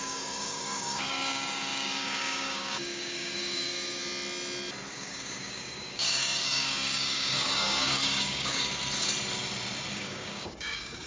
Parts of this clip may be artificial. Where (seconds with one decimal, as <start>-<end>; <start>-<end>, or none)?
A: 0.0-4.0; 4.9-8.7; 9.9-11.1